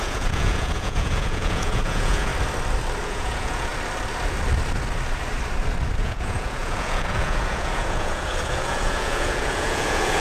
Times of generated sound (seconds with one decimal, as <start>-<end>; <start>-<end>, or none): 0.0-2.3; 3.0-3.7; 6.0-10.2